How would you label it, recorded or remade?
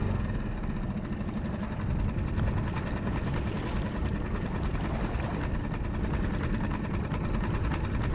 recorded